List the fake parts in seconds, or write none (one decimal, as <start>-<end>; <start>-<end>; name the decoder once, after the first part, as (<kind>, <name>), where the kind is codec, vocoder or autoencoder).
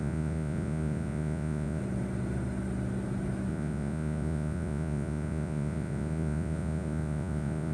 0.0-1.8 (vocoder, Vocos); 3.5-7.7